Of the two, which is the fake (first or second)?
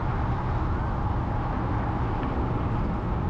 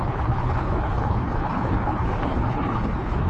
second